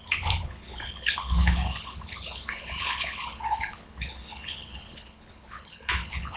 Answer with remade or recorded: remade